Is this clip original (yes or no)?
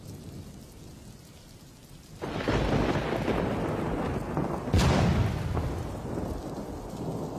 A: yes